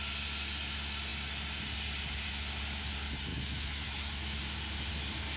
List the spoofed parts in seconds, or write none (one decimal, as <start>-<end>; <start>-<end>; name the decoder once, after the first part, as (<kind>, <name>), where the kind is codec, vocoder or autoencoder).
3.3-4.4 (autoencoder, DAC-VAE)